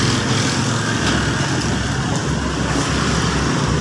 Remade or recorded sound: recorded